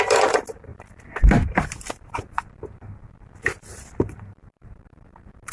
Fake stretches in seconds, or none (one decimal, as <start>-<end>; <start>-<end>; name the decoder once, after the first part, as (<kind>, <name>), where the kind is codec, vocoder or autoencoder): 0.0-0.7 (vocoder, BigVGAN v2); 4.0-5.5